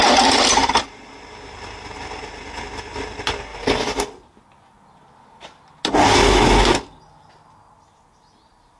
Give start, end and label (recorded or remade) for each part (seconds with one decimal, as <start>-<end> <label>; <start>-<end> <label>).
0.0-8.8 recorded